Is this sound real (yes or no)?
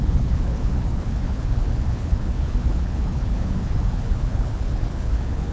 no